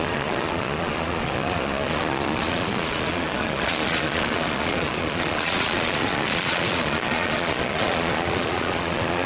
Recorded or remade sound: remade